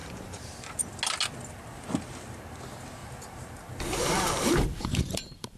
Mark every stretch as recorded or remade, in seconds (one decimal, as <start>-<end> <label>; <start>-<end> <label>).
0.0-0.6 remade; 0.6-3.0 recorded; 3.0-5.6 remade